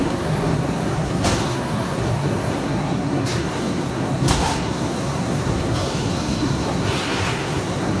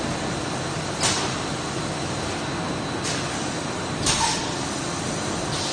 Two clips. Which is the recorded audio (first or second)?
second